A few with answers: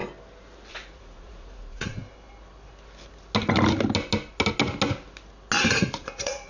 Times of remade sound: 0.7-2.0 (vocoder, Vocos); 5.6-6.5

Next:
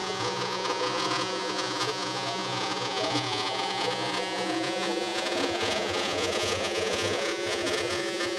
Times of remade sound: 0.0-8.4 (vocoder, Vocos)

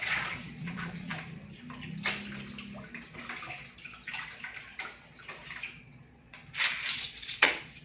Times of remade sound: 0.0-1.1 (vocoder, Vocos); 5.8-6.4; 6.9-7.8

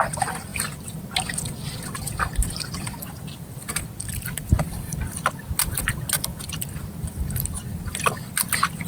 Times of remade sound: none

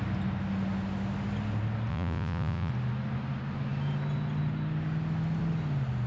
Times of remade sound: 1.9-2.7 (vocoder, Vocos)

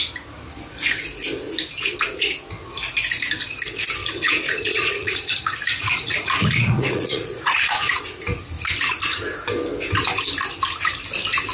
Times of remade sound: 4.0-8.0 (vocoder, Vocos)